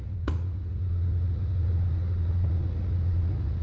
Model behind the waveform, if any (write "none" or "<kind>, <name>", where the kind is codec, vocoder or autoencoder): vocoder, Vocos